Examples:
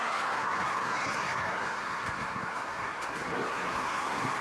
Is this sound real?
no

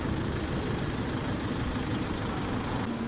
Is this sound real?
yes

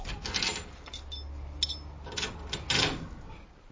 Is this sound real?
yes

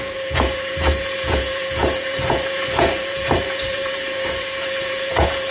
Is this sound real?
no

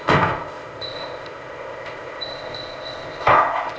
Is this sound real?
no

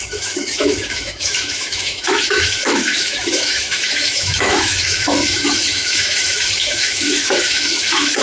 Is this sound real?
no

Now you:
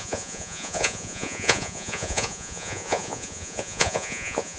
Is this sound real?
no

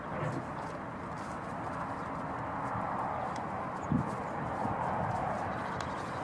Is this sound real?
yes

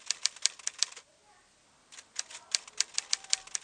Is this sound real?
yes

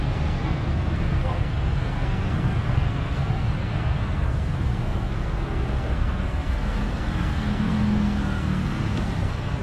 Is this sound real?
no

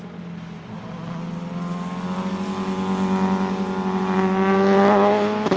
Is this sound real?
yes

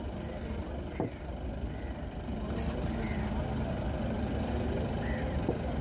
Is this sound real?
yes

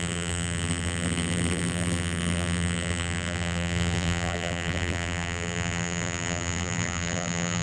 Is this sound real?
no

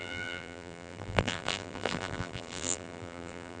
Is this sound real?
no